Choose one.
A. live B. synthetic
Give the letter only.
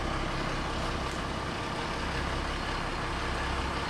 A